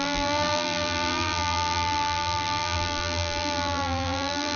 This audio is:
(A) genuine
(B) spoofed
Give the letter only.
B